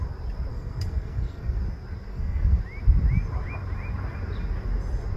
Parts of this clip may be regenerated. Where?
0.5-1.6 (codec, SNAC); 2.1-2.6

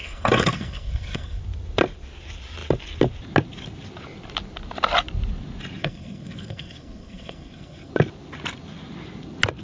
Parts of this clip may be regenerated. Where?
0.0-1.4 (codec, SNAC); 5.8-7.9

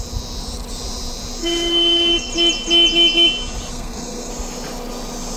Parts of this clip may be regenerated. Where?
1.4-2.3 (codec, SNAC); 3.7-4.3

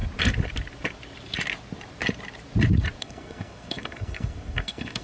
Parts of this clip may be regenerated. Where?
3.0-5.0 (codec, SNAC)

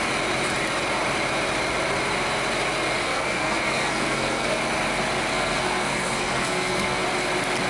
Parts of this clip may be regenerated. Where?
3.0-4.6 (codec, SNAC); 5.3-7.0